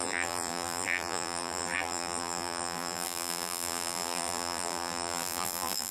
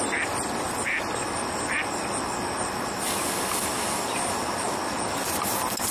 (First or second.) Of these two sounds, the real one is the second